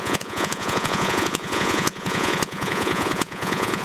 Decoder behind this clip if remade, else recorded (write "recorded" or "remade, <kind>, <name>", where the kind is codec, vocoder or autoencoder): remade, vocoder, Vocos